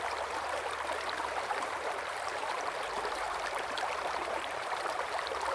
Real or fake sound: fake